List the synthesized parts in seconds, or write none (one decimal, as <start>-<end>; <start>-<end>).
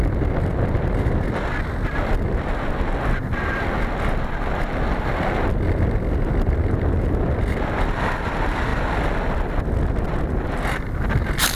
none